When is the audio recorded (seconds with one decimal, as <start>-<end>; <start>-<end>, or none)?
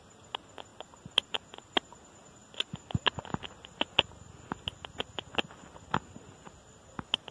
0.0-0.7; 1.4-7.3